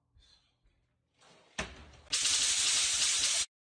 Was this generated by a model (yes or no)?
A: no